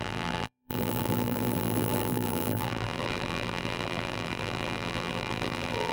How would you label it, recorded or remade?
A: remade